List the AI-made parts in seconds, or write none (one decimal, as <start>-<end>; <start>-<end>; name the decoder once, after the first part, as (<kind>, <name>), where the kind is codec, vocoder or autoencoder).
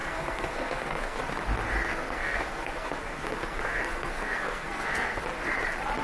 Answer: 0.0-1.2 (codec, SNAC); 1.9-5.2